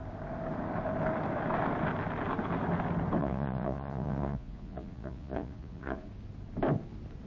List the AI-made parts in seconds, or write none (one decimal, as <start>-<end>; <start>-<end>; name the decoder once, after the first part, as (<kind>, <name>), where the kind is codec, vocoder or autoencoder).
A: 3.2-6.1 (vocoder, Vocos)